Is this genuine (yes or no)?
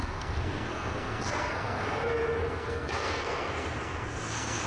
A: no